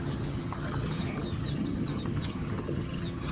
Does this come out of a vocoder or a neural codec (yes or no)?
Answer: yes